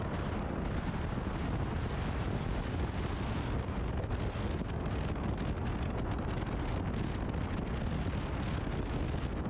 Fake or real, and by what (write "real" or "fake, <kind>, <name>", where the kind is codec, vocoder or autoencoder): real